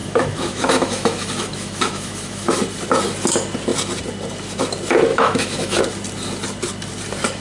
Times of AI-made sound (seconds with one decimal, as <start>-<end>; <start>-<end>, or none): 0.0-2.6; 5.1-5.8